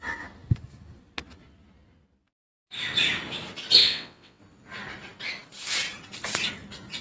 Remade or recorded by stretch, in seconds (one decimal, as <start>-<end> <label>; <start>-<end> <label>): 0.0-3.8 recorded; 3.8-4.4 remade; 4.4-7.0 recorded